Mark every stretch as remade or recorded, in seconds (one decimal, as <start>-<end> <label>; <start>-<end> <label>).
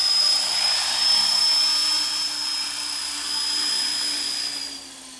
0.0-1.4 remade; 1.4-5.2 recorded